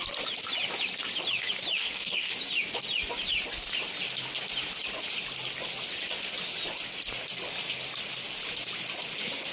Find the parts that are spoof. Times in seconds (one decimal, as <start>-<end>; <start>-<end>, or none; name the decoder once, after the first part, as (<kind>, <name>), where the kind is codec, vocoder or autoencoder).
1.8-2.3 (codec, SNAC)